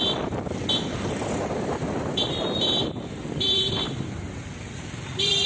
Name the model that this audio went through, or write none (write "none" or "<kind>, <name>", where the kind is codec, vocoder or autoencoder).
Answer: vocoder, BigVGAN v2